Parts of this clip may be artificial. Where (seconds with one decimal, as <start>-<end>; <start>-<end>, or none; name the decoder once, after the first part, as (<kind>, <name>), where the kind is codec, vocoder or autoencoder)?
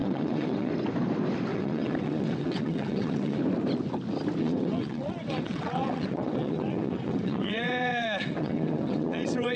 0.0-0.7 (vocoder, WaveNeXt); 1.5-3.4; 4.4-9.6